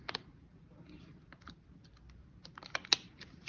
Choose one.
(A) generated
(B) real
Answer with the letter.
B